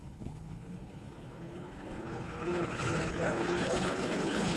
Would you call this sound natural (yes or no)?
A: no